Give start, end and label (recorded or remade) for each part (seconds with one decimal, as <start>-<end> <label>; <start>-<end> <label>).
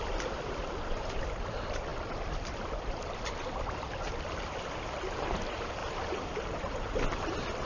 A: 0.0-7.7 recorded